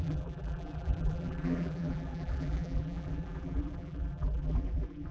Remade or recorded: remade